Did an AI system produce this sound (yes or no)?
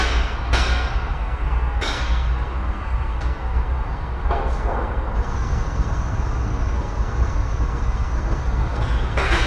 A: yes